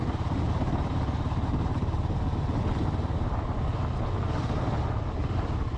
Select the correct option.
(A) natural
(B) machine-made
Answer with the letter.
A